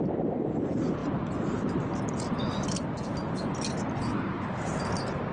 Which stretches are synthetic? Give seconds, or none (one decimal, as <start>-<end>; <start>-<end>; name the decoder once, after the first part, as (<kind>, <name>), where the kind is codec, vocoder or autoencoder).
none

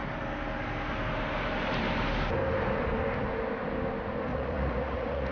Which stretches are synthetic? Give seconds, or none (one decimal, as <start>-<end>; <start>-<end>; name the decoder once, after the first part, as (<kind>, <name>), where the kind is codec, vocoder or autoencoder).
4.3-5.3 (vocoder, Vocos)

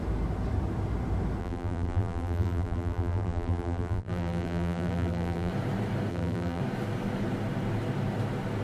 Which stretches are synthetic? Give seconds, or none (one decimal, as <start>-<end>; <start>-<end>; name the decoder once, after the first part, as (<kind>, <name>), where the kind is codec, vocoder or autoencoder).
1.4-5.5 (vocoder, BigVGAN v2); 6.1-6.6

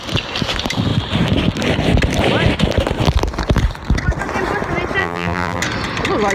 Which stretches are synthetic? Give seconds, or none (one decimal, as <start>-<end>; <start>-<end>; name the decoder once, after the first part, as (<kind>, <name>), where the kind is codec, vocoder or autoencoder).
5.0-5.6 (vocoder, BigVGAN v2)

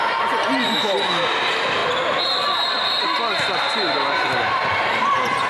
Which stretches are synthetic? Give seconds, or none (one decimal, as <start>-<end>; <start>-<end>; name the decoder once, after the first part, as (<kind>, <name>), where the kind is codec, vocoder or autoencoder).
0.0-1.8 (vocoder, BigVGAN v2); 3.0-5.5